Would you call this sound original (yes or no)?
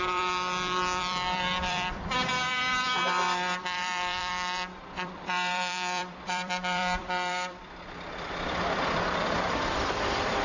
no